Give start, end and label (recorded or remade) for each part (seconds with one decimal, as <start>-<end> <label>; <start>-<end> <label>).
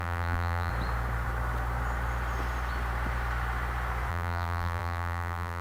0.0-0.7 remade; 0.7-4.1 recorded; 4.1-5.6 remade